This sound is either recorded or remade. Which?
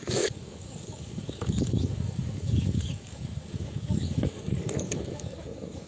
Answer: remade